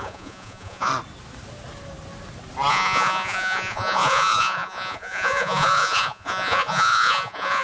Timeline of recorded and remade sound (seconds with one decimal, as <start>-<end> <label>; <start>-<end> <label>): 0.0-0.9 remade; 0.9-2.7 recorded; 2.7-7.6 remade